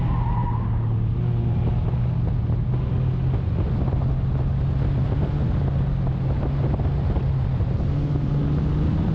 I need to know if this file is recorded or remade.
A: recorded